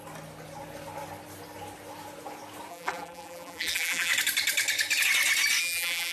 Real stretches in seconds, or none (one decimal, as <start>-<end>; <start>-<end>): 0.0-2.7; 4.1-5.6